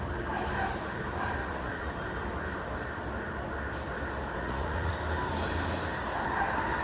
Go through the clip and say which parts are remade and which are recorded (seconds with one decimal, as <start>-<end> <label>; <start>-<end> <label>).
0.0-1.4 recorded; 1.4-1.9 remade; 1.9-4.4 recorded; 4.4-4.9 remade; 4.9-6.8 recorded